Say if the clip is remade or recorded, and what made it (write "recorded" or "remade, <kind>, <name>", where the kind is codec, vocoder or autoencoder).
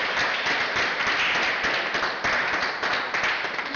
recorded